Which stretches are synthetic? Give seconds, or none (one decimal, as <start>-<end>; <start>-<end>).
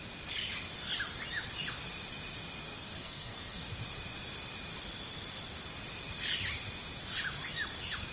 2.7-3.7